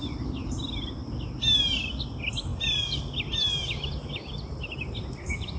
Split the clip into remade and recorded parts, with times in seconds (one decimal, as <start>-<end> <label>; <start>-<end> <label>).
0.0-0.6 remade; 0.6-1.0 recorded; 1.0-1.6 remade; 1.6-5.6 recorded